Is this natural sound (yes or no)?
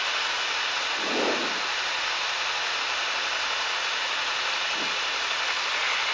yes